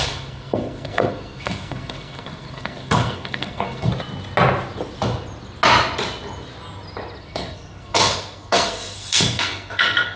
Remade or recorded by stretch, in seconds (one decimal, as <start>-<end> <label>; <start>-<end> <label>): 0.0-3.9 remade; 3.9-7.2 recorded; 7.2-10.2 remade